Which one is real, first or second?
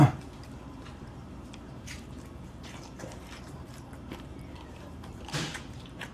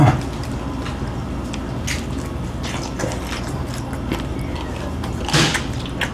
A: second